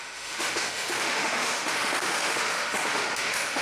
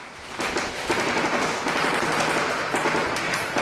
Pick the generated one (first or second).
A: first